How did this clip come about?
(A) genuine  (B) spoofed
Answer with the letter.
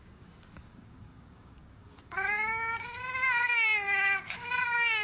B